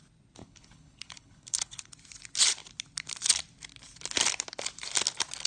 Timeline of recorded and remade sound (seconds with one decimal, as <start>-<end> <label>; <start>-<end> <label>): 0.0-0.4 recorded; 0.4-1.8 remade; 1.8-5.5 recorded